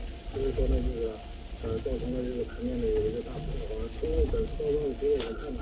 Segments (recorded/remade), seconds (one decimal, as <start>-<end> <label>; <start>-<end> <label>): 0.0-5.6 recorded